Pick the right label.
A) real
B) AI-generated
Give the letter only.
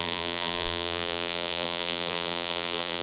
B